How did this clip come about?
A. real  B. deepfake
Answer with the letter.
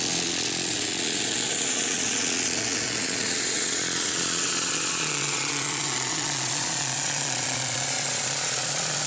B